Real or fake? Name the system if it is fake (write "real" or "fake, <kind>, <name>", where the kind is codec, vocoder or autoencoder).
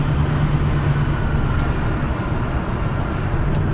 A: real